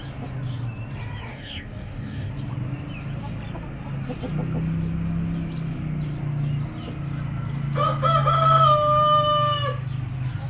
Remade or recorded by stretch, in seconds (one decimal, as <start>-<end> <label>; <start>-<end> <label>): 0.0-1.3 recorded; 1.3-2.3 remade; 2.3-10.5 recorded